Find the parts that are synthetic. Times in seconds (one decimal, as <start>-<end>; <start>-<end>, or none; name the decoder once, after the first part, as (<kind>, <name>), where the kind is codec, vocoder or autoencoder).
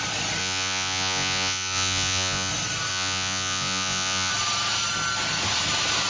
0.4-2.5 (vocoder, Vocos); 2.9-4.3